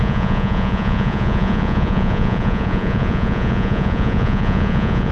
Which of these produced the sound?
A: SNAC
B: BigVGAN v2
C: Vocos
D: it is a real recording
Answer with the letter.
C